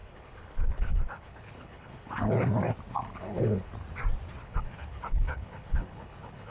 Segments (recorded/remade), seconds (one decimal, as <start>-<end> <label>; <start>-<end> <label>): 0.0-2.5 remade; 2.5-2.9 recorded; 2.9-3.7 remade; 3.7-4.4 recorded; 4.4-6.5 remade